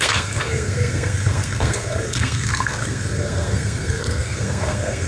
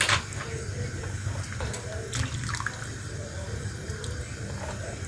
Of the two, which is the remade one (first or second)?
first